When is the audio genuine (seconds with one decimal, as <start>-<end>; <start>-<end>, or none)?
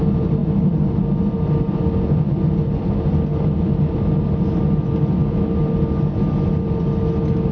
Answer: 0.0-7.5